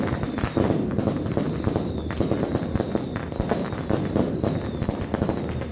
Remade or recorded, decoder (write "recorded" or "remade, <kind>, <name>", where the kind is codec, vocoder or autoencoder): recorded